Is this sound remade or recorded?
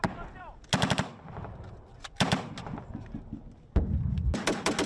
recorded